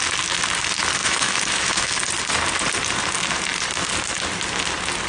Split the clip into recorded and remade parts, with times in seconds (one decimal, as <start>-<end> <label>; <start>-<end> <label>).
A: 0.0-1.0 recorded; 1.0-2.0 remade; 2.0-5.1 recorded